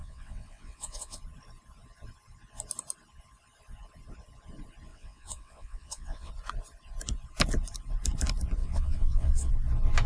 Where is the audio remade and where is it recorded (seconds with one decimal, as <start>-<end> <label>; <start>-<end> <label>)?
0.0-1.2 remade; 1.2-4.9 recorded; 4.9-6.3 remade; 6.3-8.6 recorded; 8.6-9.5 remade; 9.5-10.1 recorded